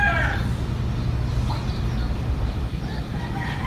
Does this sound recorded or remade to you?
recorded